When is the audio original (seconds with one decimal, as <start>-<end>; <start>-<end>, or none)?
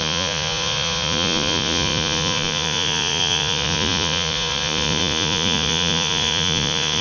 none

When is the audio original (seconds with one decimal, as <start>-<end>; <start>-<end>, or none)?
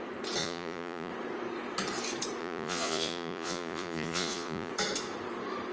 0.0-0.4; 1.1-2.4; 4.7-5.7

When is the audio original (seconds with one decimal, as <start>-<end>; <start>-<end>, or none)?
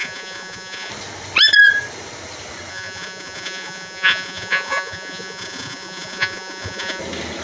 0.9-2.7; 7.0-7.4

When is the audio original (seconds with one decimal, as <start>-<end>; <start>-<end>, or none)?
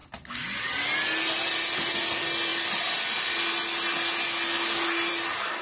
0.0-5.6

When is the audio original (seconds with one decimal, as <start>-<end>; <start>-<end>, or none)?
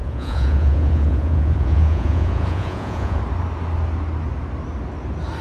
3.2-5.4